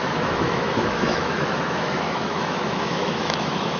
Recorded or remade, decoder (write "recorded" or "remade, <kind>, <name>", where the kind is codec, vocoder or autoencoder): remade, autoencoder, DAC-VAE